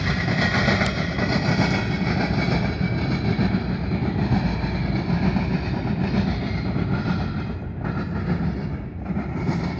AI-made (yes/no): no